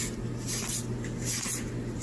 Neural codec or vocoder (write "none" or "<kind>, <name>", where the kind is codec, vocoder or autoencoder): none